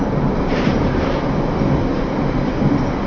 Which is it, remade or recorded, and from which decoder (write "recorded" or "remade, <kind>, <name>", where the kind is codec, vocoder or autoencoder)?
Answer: recorded